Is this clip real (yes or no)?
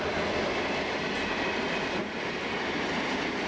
yes